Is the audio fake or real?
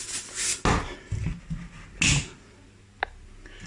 real